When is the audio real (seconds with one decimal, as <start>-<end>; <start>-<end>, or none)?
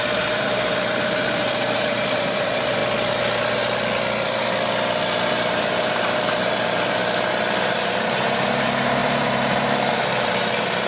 2.8-5.3; 7.0-7.6